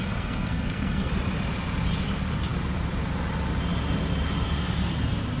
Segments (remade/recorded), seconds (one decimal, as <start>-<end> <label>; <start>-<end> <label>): 0.0-1.1 remade; 1.1-5.4 recorded